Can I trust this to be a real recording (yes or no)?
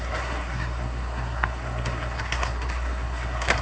no